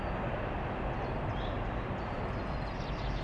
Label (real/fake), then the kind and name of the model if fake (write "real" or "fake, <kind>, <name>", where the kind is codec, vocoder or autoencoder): real